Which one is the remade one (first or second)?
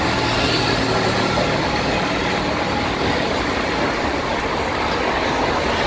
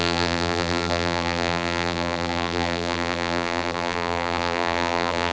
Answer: second